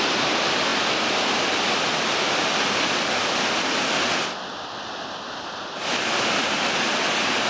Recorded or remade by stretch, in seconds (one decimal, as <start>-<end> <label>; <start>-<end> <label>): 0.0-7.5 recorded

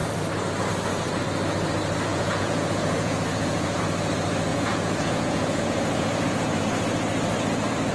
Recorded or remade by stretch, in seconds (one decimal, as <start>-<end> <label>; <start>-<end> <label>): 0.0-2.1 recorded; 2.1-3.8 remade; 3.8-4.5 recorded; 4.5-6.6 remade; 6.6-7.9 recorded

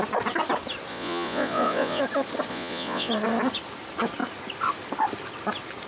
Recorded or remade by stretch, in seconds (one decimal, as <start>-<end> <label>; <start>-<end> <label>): 0.0-0.9 recorded; 0.9-2.0 remade; 2.0-2.5 recorded; 2.5-3.1 remade; 3.1-5.9 recorded

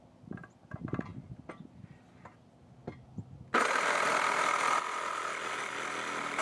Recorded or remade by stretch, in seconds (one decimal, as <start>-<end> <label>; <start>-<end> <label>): 0.0-6.4 recorded

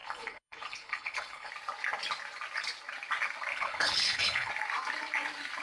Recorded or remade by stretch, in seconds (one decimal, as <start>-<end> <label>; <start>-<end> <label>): 0.0-1.5 remade; 1.5-3.5 recorded; 3.5-4.5 remade; 4.5-5.6 recorded

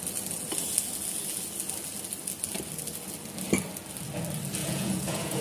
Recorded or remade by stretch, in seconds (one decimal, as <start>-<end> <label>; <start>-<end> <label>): 0.0-4.6 recorded; 4.6-5.4 remade

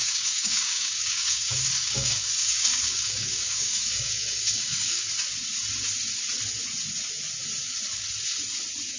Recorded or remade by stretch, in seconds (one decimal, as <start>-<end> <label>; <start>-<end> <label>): 0.0-5.1 remade; 5.1-9.0 recorded

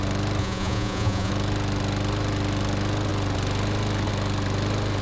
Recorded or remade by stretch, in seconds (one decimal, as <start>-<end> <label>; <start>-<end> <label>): 0.0-0.4 recorded; 0.4-1.3 remade; 1.3-5.0 recorded